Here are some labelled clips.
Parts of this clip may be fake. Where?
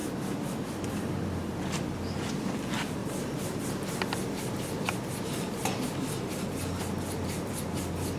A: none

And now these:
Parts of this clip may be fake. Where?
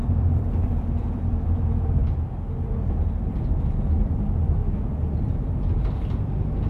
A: 0.0-2.0; 2.6-4.6; 5.2-6.7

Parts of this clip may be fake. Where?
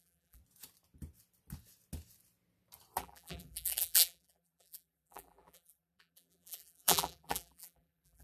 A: 0.0-0.4; 3.0-8.2